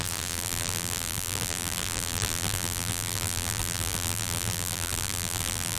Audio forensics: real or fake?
fake